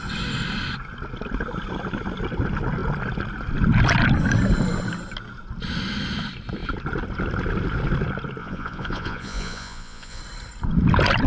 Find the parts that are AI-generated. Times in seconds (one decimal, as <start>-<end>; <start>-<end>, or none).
8.4-10.2